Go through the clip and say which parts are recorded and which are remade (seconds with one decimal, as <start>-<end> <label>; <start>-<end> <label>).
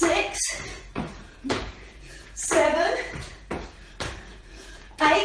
0.0-1.3 recorded; 1.3-3.5 remade; 3.5-4.3 recorded; 4.3-5.2 remade